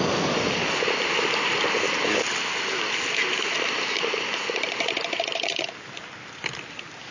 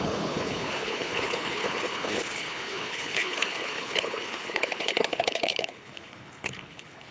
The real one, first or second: first